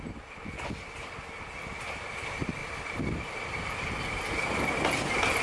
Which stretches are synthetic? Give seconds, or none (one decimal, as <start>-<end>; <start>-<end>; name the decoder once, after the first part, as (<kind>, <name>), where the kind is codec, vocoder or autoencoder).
none